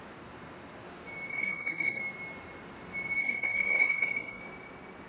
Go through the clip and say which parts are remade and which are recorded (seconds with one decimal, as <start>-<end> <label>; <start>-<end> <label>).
0.0-1.3 recorded; 1.3-2.0 remade; 2.0-3.2 recorded; 3.2-4.4 remade; 4.4-5.1 recorded